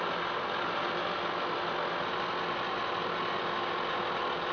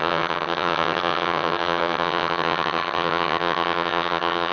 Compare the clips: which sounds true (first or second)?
first